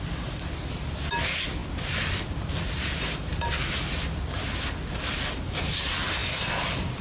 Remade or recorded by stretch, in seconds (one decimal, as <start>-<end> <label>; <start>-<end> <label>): 0.0-7.0 recorded